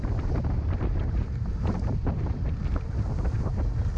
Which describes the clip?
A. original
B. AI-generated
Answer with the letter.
A